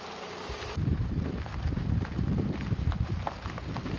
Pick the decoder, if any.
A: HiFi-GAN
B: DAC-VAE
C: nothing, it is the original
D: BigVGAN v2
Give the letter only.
D